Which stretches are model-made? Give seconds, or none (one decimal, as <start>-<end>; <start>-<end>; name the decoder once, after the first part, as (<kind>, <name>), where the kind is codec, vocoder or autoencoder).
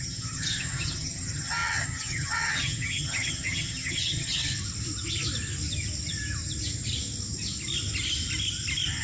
0.0-4.4 (vocoder, HiFi-GAN)